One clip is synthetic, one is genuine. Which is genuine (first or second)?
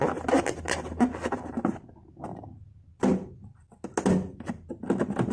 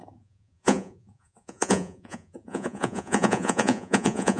first